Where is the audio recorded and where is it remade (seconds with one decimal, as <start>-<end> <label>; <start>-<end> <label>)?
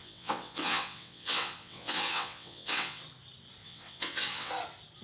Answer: 0.0-3.0 remade; 3.0-3.6 recorded; 3.6-4.5 remade; 4.5-5.0 recorded